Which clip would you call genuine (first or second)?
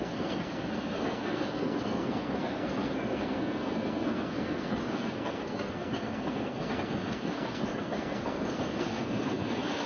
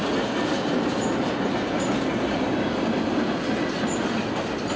second